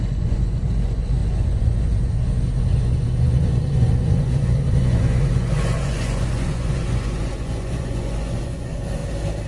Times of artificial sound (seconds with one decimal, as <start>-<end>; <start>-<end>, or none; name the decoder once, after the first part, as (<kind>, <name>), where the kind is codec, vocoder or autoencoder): 0.0-9.0 (vocoder, Vocos)